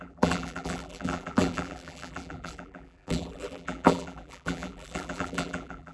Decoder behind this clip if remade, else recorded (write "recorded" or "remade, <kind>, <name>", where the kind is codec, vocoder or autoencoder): remade, vocoder, BigVGAN v2